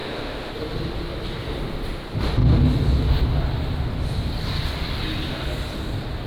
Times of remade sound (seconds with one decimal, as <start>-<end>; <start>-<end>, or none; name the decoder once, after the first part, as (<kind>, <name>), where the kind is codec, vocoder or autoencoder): 0.0-0.5 (autoencoder, DAC-VAE)